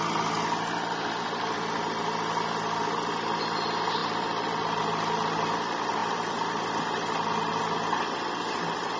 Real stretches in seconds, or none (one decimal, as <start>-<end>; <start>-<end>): 0.0-9.0